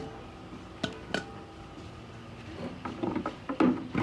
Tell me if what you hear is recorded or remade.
recorded